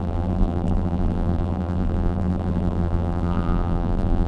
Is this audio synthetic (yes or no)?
yes